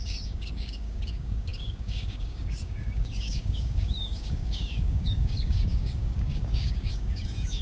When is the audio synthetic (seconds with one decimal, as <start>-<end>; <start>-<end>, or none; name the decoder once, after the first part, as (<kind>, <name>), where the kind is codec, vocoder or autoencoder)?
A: 0.0-7.6 (codec, DAC)